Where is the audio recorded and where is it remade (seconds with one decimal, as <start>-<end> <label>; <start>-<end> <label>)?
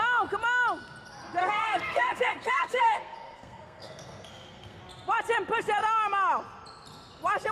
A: 0.0-1.4 recorded; 1.4-4.8 remade; 4.8-7.5 recorded